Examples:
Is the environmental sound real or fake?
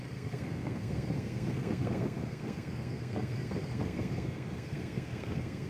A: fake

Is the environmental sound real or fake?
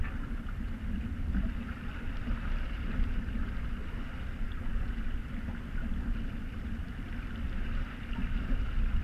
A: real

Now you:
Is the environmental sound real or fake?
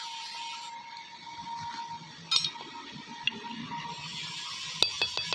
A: real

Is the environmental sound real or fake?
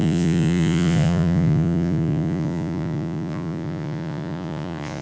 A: fake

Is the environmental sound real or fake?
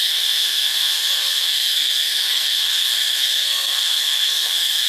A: fake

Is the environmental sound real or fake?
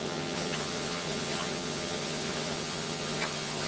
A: fake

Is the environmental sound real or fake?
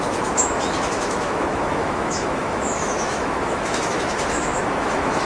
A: fake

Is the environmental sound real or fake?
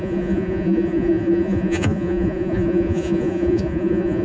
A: fake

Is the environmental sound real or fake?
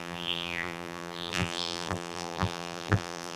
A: fake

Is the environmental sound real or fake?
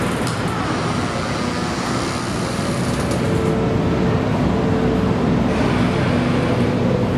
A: real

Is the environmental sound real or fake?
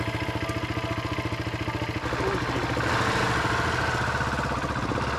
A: real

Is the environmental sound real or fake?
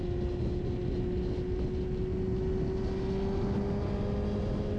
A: real